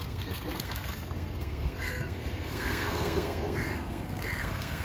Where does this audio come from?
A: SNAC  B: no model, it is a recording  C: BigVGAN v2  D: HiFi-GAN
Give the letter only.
A